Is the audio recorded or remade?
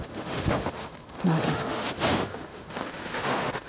remade